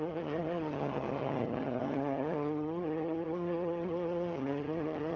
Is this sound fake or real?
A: fake